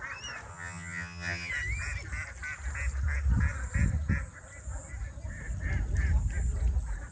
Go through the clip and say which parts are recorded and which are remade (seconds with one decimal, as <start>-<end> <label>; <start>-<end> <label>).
0.0-0.5 recorded; 0.5-1.5 remade; 1.5-7.1 recorded